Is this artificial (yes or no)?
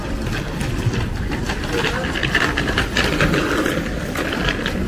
no